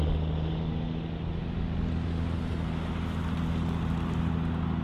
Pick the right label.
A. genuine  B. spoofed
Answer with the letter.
A